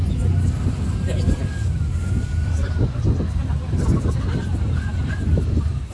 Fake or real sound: real